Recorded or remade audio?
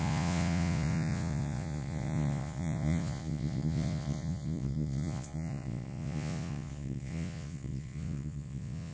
remade